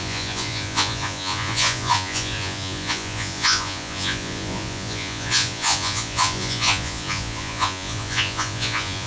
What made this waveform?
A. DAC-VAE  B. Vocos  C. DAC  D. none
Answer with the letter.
B